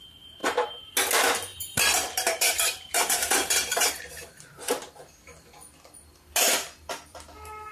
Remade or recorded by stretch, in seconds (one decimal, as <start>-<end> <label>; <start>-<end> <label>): 0.0-0.4 recorded; 0.4-0.9 remade; 0.9-1.5 recorded; 1.5-5.1 remade; 5.1-7.7 recorded